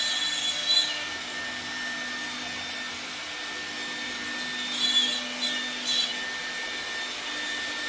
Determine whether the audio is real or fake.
real